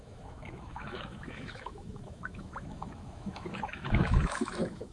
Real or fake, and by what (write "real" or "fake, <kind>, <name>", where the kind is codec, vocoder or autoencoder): fake, autoencoder, DAC-VAE